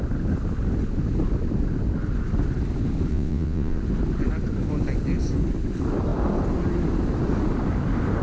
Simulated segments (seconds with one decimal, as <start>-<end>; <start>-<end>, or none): 3.1-3.8